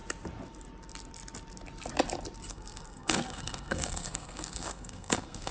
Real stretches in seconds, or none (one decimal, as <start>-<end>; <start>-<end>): 0.0-2.5